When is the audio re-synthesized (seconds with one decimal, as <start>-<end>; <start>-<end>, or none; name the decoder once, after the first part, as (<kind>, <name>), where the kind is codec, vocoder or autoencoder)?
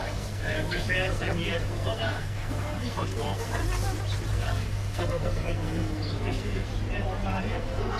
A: 0.0-3.6 (codec, SNAC); 4.3-6.7; 7.4-8.0